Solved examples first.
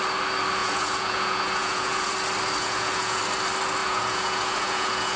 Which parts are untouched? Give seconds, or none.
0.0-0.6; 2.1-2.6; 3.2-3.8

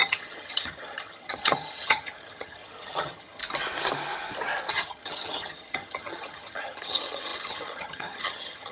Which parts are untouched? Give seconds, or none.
3.4-4.7

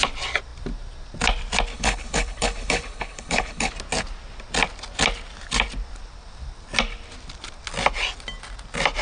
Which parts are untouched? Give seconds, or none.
0.0-1.7; 3.7-9.0

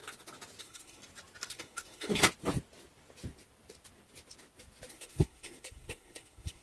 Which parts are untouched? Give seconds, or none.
0.0-0.6; 1.0-1.5; 2.2-4.9

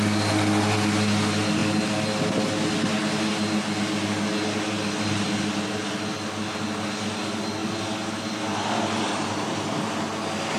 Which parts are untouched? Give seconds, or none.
0.0-10.6